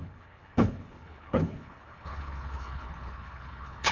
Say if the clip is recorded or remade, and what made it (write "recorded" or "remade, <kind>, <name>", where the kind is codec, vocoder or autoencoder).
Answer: remade, codec, HILCodec